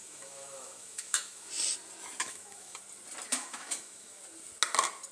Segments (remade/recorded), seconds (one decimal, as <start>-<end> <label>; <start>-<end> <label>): 0.0-1.5 remade; 1.5-2.2 recorded; 2.2-2.8 remade; 2.8-3.3 recorded; 3.3-4.2 remade; 4.2-5.1 recorded